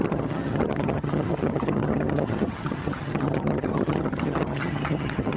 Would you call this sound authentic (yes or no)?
no